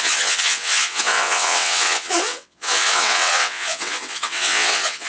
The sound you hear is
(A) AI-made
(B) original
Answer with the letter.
A